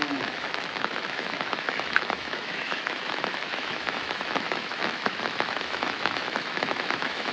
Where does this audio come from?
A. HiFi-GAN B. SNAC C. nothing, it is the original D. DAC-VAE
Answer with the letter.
D